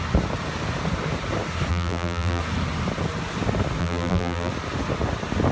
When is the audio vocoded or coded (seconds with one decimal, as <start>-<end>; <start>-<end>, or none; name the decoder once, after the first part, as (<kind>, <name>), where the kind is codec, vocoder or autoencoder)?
1.7-2.4 (vocoder, BigVGAN v2); 3.8-4.5